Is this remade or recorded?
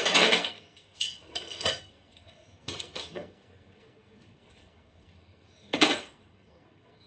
remade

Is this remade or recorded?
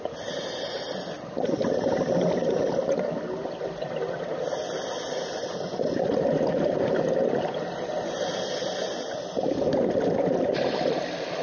recorded